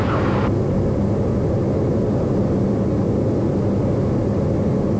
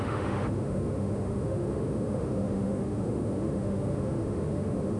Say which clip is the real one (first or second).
first